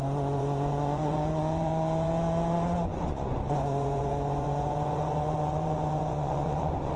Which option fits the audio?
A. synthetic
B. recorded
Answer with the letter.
A